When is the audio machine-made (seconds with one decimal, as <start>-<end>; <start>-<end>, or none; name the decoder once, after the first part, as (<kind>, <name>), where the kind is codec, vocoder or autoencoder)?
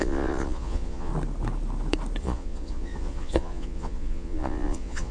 0.0-1.1 (vocoder, Vocos); 2.2-5.1